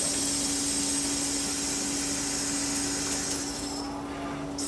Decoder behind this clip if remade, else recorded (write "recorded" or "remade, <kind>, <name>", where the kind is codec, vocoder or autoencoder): recorded